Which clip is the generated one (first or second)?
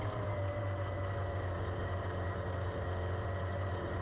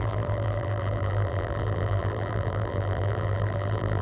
second